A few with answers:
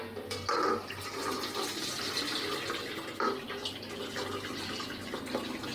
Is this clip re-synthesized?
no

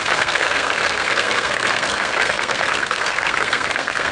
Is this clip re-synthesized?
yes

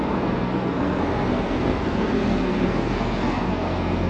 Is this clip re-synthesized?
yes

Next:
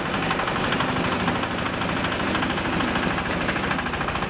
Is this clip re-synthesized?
no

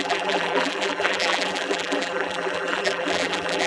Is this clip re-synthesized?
yes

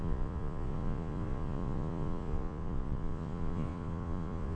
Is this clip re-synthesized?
yes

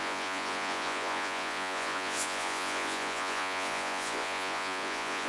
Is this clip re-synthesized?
yes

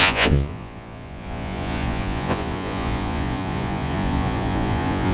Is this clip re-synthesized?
yes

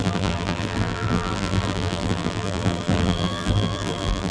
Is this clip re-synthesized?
yes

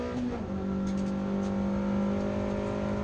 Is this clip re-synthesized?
no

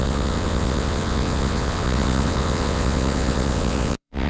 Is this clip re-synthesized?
yes